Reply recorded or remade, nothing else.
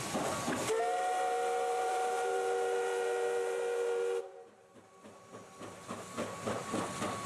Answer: recorded